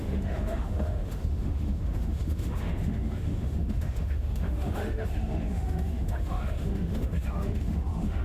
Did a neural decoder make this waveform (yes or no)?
yes